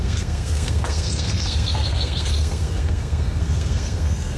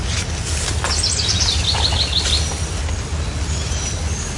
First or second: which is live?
second